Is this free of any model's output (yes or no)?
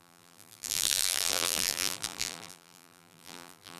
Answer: no